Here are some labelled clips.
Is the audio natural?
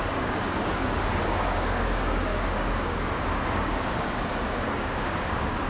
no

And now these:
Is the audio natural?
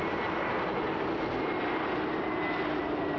yes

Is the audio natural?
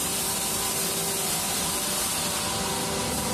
yes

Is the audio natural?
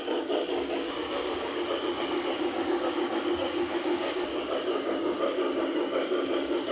no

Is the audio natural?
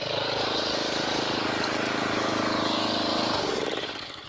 no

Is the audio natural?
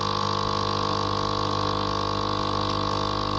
yes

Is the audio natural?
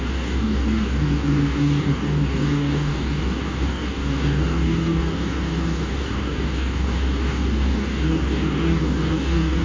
no